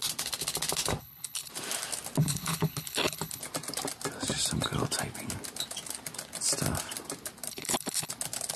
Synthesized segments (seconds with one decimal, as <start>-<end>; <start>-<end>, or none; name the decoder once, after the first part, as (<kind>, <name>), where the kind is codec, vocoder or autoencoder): 1.0-1.5 (codec, HILCodec); 2.2-3.4; 7.5-8.1